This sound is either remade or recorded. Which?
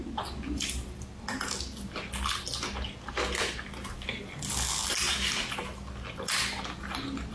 recorded